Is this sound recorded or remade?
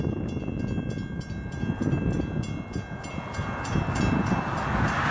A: recorded